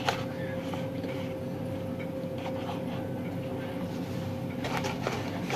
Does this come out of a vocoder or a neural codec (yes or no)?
no